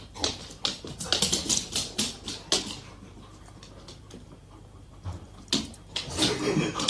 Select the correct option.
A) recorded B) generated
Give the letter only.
A